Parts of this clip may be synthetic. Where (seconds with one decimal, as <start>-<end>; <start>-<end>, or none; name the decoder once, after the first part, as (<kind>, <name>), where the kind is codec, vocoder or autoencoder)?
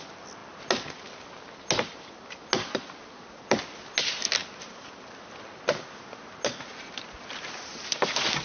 none